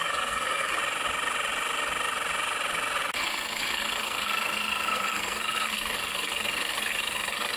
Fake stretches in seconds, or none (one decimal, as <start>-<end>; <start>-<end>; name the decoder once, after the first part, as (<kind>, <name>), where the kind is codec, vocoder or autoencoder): 0.0-0.8 (codec, SNAC); 3.1-7.6